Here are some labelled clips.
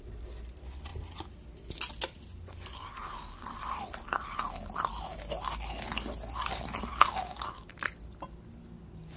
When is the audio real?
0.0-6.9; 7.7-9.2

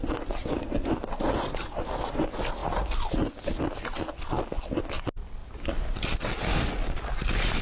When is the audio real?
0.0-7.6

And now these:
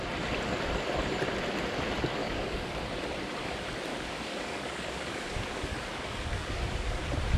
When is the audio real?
0.0-2.2; 2.8-3.9; 7.0-7.4